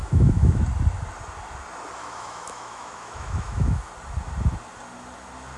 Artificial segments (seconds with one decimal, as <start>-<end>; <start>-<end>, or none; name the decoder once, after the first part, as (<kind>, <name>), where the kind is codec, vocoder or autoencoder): 0.0-0.6 (autoencoder, DAC-VAE); 2.0-3.9